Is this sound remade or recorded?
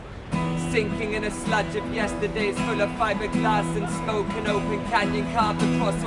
recorded